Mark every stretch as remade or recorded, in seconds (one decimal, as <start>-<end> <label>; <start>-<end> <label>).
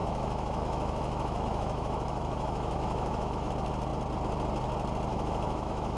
0.0-3.5 remade; 3.5-5.1 recorded; 5.1-6.0 remade